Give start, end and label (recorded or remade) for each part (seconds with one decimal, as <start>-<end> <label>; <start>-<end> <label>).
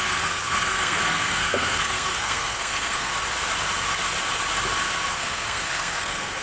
0.0-3.1 remade; 3.1-5.1 recorded; 5.1-6.4 remade